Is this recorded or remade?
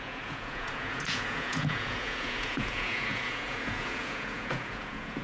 remade